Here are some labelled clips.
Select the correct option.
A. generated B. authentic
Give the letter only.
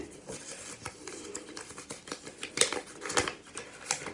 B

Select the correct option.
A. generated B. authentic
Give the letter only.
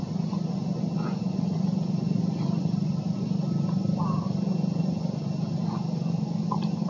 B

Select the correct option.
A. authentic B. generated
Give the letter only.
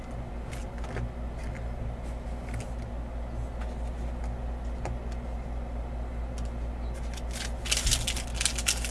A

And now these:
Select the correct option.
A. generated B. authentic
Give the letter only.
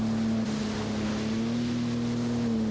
B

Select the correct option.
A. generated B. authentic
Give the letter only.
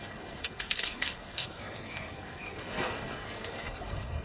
A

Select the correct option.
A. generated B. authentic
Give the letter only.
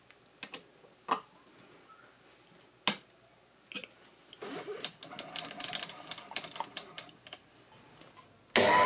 B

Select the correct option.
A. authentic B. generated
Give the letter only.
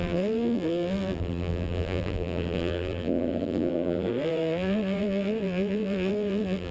B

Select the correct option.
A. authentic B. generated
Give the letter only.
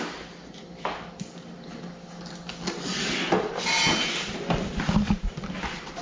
A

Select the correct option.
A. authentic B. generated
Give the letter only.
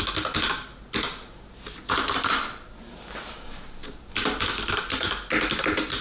A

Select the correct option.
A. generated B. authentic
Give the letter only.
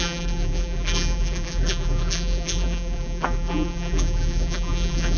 A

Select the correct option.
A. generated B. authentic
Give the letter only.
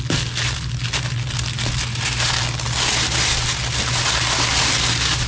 B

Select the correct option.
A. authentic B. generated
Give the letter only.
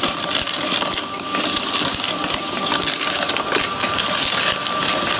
B